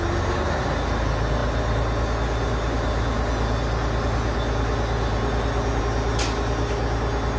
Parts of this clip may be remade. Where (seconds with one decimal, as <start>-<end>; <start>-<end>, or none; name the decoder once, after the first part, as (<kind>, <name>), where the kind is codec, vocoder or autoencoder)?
none